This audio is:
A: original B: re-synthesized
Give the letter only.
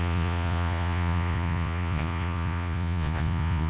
B